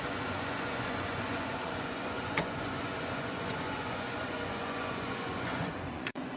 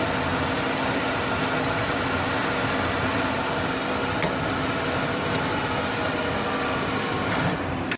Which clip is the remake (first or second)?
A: first